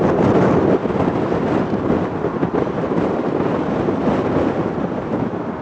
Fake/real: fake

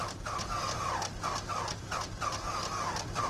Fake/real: real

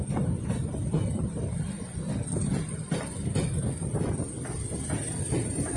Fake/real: real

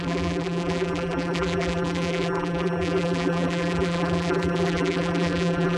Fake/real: fake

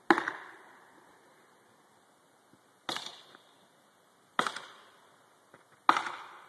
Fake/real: real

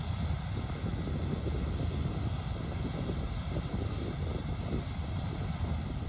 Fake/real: real